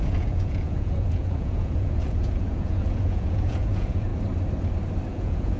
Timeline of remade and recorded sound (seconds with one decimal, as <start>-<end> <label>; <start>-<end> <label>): 0.0-4.1 remade; 4.1-5.1 recorded; 5.1-5.6 remade